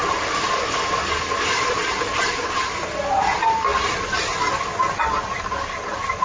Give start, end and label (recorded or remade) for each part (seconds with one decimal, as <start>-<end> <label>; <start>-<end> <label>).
0.0-3.2 remade; 3.2-6.2 recorded